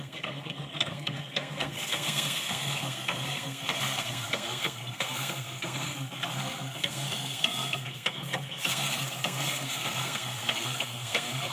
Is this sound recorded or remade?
remade